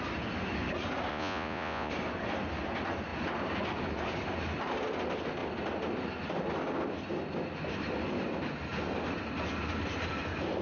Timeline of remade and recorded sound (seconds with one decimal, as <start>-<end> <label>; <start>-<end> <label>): 0.0-1.1 recorded; 1.1-1.9 remade; 1.9-10.6 recorded